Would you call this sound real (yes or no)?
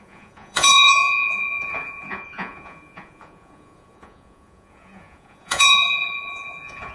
no